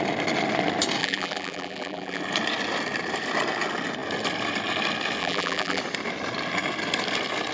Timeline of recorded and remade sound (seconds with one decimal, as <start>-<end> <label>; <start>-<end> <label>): 0.0-1.0 recorded; 1.0-2.2 remade; 2.2-5.2 recorded; 5.2-5.8 remade; 5.8-7.5 recorded